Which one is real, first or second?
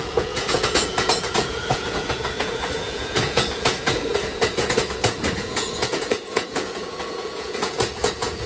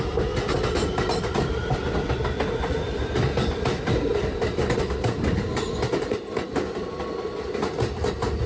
second